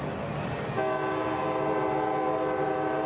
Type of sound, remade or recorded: recorded